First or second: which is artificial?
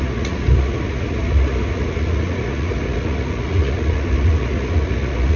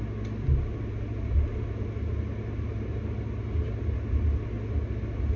first